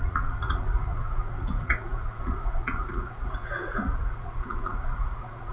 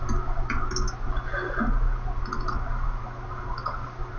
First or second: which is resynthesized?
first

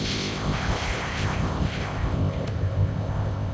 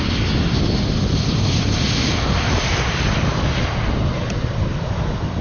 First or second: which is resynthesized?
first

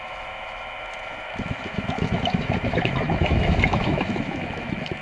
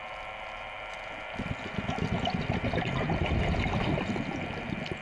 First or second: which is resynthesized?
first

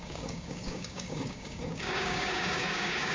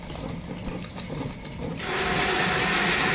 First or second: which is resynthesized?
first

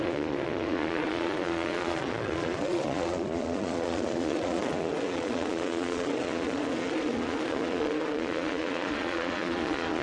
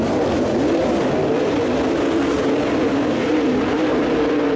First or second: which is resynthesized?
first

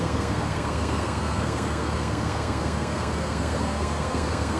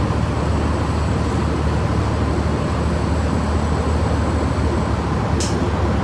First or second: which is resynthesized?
first